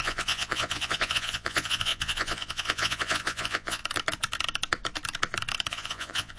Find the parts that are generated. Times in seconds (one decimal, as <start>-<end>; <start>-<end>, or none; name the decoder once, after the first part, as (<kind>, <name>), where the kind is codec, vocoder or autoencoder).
0.0-3.8 (vocoder, Vocos); 5.7-6.4